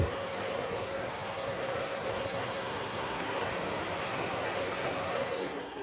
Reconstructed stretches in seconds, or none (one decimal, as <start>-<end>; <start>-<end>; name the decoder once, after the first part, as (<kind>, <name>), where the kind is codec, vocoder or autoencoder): 0.0-3.5 (codec, SNAC); 4.0-5.8